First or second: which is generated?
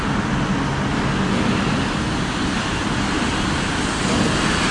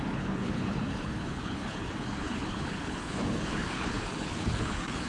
second